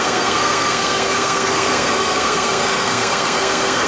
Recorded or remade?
remade